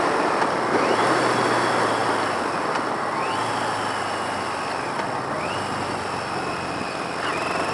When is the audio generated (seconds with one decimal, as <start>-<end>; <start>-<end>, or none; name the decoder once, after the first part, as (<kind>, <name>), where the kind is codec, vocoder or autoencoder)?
none